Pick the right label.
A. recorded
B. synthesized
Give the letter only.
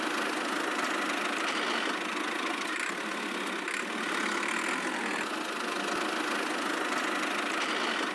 A